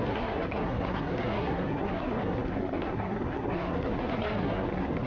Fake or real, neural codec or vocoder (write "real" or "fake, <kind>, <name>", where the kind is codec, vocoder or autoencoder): fake, codec, SNAC